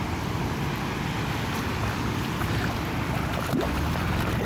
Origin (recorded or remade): recorded